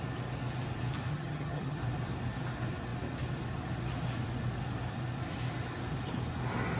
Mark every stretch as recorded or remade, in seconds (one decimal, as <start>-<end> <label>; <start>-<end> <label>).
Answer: 0.0-1.1 recorded; 1.1-1.8 remade; 1.8-6.8 recorded